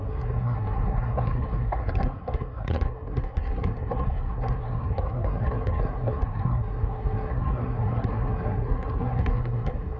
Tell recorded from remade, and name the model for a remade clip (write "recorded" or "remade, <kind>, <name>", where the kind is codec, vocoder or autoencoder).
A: remade, codec, SNAC